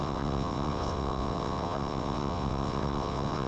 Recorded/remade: remade